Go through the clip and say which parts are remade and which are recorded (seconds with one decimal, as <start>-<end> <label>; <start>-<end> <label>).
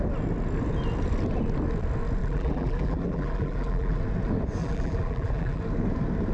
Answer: 0.0-2.2 recorded; 2.2-4.0 remade; 4.0-4.6 recorded; 4.6-5.6 remade; 5.6-6.3 recorded